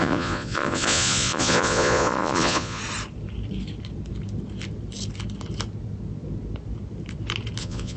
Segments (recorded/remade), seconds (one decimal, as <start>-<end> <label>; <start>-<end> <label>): 0.0-2.8 remade; 2.8-7.6 recorded; 7.6-8.0 remade